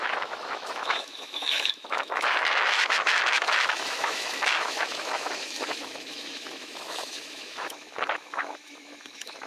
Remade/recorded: remade